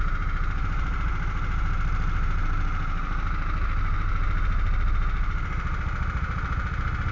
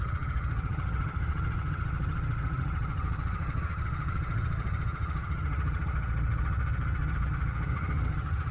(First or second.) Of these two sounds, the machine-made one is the second